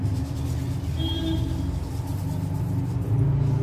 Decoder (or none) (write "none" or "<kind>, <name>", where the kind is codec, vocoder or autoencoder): none